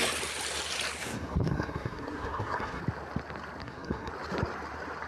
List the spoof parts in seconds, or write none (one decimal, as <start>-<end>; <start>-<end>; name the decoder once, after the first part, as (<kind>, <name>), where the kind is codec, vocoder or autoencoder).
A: 1.0-2.8 (codec, SNAC); 3.6-4.1